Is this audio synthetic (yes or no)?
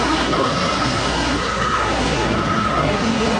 yes